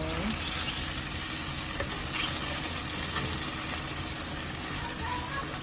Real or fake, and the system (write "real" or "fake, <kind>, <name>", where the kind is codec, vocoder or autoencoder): real